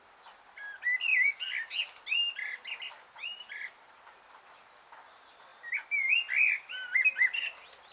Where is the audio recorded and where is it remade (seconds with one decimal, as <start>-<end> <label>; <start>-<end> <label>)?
0.0-7.9 recorded